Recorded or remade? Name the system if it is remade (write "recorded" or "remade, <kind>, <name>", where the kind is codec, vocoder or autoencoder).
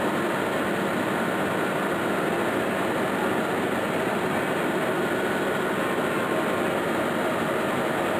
recorded